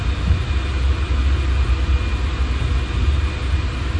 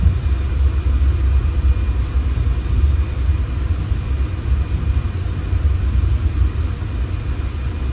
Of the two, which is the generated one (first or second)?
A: second